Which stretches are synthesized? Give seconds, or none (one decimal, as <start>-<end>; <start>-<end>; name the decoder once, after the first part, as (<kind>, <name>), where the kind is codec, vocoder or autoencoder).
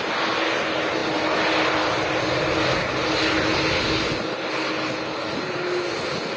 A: none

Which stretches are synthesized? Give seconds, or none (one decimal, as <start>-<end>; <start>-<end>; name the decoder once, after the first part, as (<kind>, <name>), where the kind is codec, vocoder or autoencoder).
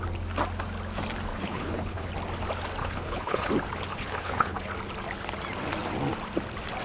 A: 1.3-2.1 (codec, HILCodec); 2.8-3.5; 3.9-4.7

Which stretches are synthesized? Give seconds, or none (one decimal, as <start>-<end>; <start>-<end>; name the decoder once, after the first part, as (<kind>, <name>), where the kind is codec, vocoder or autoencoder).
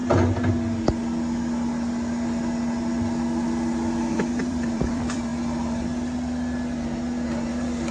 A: 4.1-5.3 (vocoder, BigVGAN v2)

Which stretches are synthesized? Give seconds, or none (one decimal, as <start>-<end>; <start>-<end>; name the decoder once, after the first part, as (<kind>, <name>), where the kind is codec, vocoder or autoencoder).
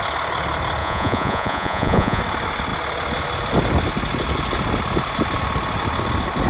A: 0.8-2.2 (vocoder, Vocos)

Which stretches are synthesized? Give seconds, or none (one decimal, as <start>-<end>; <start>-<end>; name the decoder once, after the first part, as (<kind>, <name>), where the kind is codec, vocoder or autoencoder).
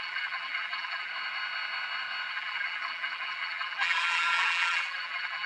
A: 0.0-1.1 (vocoder, BigVGAN v2); 2.3-5.5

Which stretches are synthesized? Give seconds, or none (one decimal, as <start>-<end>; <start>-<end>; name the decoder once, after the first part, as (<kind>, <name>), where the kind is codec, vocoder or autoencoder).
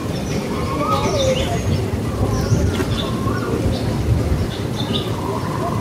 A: 0.0-1.8 (vocoder, BigVGAN v2)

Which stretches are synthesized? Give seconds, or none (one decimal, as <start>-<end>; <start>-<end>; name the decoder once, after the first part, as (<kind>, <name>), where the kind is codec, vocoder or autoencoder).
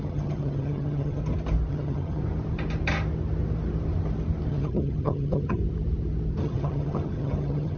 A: 0.0-1.2 (vocoder, HiFi-GAN); 1.7-2.2; 4.5-5.6; 6.4-7.8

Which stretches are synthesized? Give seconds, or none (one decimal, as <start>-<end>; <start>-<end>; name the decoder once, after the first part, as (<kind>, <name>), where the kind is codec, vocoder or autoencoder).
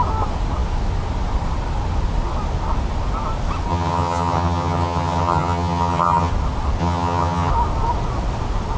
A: 3.7-6.3 (vocoder, HiFi-GAN); 6.8-7.5